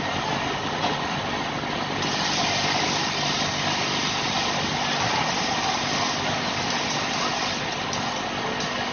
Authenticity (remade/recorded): recorded